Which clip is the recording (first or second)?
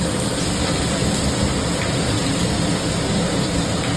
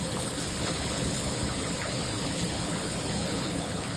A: first